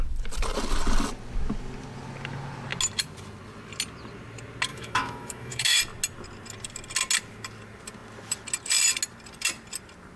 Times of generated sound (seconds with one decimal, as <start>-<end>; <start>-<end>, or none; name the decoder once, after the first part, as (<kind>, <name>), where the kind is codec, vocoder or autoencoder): 4.7-5.8 (autoencoder, DAC-VAE)